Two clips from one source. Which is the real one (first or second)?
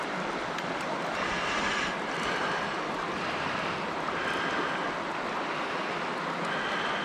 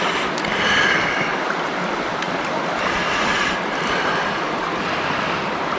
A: first